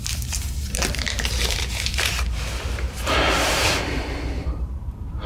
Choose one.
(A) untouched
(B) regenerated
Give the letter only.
B